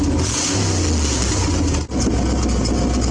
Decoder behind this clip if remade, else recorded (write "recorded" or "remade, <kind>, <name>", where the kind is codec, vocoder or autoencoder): recorded